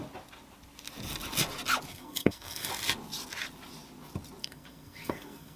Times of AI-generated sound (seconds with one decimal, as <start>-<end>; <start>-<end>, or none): 1.9-2.7; 4.4-5.6